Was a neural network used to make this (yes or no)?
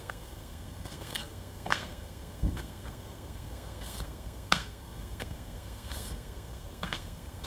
yes